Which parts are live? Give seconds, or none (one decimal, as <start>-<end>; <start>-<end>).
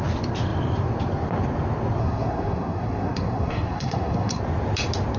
0.0-2.0; 4.4-5.2